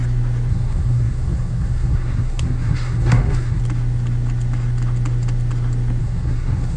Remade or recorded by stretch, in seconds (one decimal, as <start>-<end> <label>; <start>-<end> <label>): 0.0-0.5 recorded; 0.5-3.6 remade; 3.6-6.0 recorded; 6.0-6.8 remade